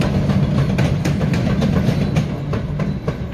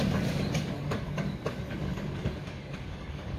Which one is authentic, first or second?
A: first